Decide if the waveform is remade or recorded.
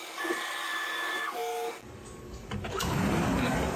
remade